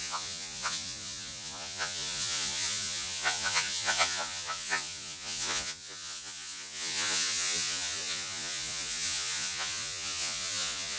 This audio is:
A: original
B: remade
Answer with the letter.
B